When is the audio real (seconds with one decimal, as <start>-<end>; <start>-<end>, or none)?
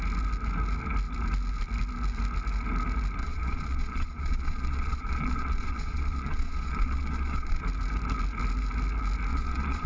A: 0.0-3.2; 7.6-9.3